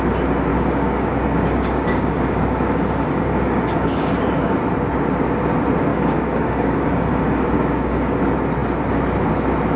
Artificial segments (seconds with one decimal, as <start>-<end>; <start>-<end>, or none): 0.5-4.6; 5.9-8.2

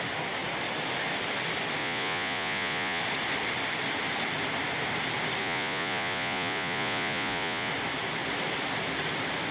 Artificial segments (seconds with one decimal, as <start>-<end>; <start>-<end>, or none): 1.8-3.0; 5.4-7.7

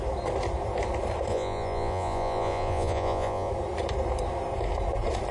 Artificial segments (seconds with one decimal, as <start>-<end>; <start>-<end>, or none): 1.3-3.5

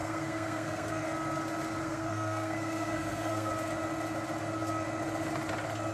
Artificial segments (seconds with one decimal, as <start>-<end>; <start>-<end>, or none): 0.0-1.0; 1.8-3.5

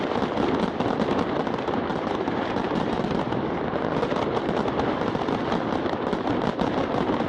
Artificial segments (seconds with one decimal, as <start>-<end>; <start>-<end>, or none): 1.9-3.4